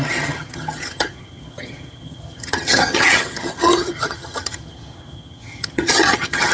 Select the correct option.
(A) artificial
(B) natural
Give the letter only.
A